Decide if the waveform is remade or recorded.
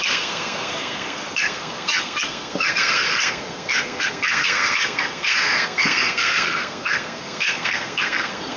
remade